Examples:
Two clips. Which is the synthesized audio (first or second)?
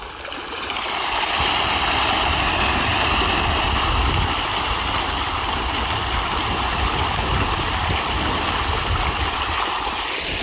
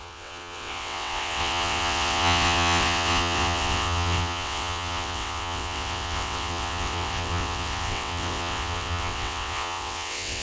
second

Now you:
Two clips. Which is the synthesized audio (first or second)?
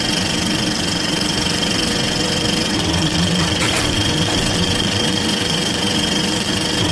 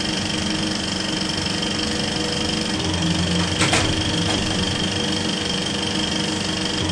first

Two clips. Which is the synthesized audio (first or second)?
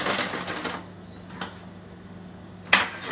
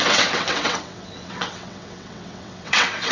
second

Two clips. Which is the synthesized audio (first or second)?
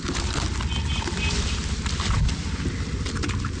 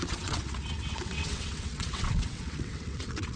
second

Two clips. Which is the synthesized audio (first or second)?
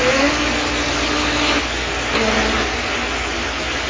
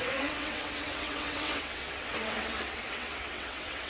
second